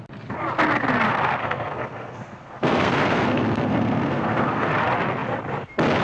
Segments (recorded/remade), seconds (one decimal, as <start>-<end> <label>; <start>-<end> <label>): 0.0-1.1 recorded; 1.1-4.7 remade; 4.7-6.0 recorded